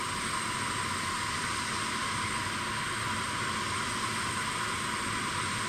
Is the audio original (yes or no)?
yes